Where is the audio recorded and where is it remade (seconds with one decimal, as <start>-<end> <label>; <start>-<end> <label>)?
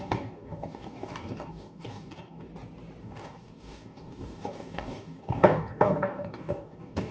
0.0-2.5 remade; 2.5-3.0 recorded; 3.0-7.1 remade